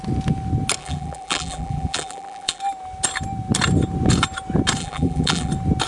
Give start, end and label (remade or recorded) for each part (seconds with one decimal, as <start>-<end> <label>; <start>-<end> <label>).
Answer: 0.0-0.8 recorded; 0.8-2.6 remade; 2.6-4.8 recorded; 4.8-5.5 remade; 5.5-5.9 recorded